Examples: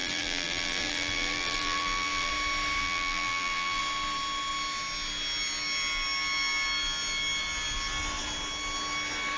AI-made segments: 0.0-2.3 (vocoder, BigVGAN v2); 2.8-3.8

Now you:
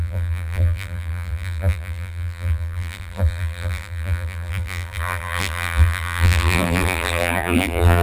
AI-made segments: 0.0-8.0 (vocoder, BigVGAN v2)

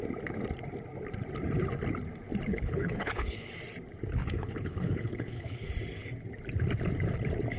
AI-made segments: 2.5-3.5 (codec, HILCodec); 4.2-5.7

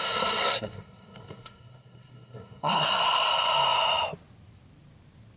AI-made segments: 0.0-2.9 (codec, SNAC)

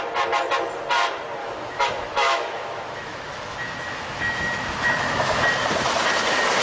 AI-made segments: 1.4-5.4 (autoencoder, DAC-VAE)

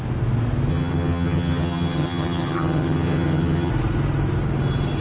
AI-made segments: 0.7-3.7 (vocoder, HiFi-GAN)